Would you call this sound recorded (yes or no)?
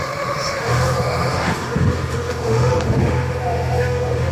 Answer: no